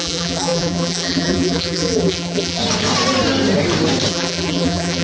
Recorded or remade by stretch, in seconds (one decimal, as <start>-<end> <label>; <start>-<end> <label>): 0.0-2.6 remade; 2.6-4.1 recorded; 4.1-5.0 remade